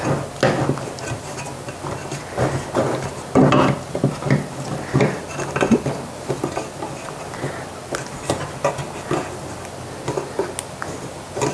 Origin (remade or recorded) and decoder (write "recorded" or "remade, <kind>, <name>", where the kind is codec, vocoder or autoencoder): recorded